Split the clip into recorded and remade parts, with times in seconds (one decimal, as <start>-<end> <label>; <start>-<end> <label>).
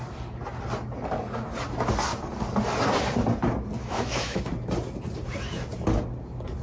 0.0-3.8 recorded; 3.8-4.4 remade; 4.4-6.6 recorded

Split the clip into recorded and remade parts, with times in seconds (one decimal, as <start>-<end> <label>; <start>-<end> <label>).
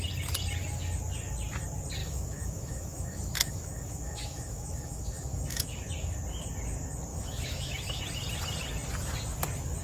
0.0-2.0 recorded; 2.0-5.9 remade; 5.9-7.1 recorded; 7.1-8.0 remade; 8.0-9.8 recorded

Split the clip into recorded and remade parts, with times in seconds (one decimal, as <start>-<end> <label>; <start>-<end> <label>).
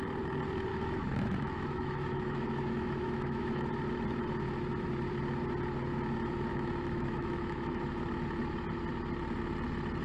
0.0-0.7 recorded; 0.7-3.7 remade; 3.7-6.5 recorded; 6.5-7.8 remade; 7.8-10.0 recorded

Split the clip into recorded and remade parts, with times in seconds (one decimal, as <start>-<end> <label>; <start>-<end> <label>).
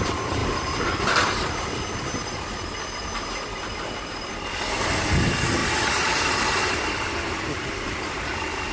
0.0-8.7 recorded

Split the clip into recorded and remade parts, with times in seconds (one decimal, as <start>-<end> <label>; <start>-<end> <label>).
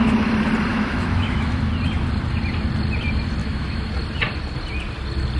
0.0-0.7 recorded; 0.7-1.6 remade; 1.6-3.4 recorded; 3.4-3.9 remade; 3.9-5.4 recorded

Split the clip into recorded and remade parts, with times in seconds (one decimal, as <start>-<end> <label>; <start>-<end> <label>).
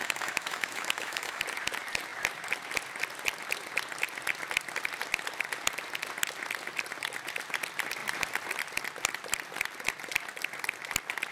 0.0-1.4 remade; 1.4-11.3 recorded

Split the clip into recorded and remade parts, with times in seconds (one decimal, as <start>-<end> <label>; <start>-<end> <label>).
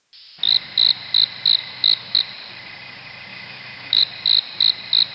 0.0-1.6 recorded; 1.6-2.2 remade; 2.2-3.3 recorded; 3.3-4.0 remade; 4.0-5.1 recorded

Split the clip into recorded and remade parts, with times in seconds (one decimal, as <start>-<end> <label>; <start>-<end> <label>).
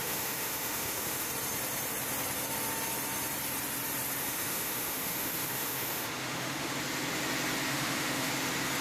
0.0-1.3 remade; 1.3-4.2 recorded; 4.2-6.7 remade; 6.7-7.7 recorded; 7.7-8.3 remade; 8.3-8.8 recorded